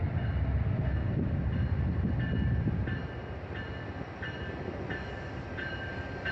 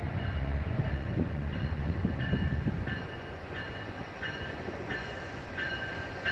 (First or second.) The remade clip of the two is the second